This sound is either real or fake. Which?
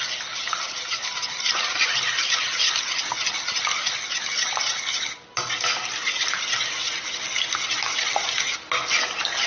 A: real